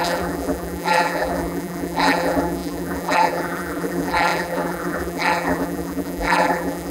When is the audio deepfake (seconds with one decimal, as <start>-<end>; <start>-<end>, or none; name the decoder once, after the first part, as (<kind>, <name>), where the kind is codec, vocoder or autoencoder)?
0.0-6.9 (vocoder, BigVGAN v2)